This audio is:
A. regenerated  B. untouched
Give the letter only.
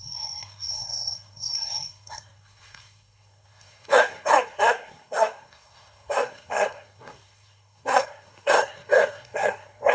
A